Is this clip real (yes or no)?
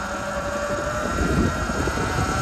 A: yes